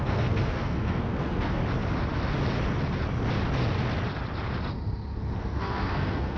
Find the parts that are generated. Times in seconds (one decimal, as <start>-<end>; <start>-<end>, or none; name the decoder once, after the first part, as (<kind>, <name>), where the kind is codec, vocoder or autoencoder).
0.0-1.6 (codec, SNAC); 5.4-6.4